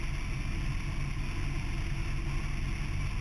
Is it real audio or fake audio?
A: real